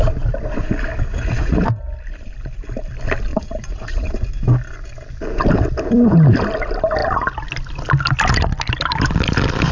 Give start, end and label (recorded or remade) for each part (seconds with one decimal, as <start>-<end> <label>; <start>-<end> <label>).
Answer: 0.0-1.1 recorded; 1.1-1.8 remade; 1.8-3.3 recorded; 3.3-4.1 remade; 4.1-9.7 recorded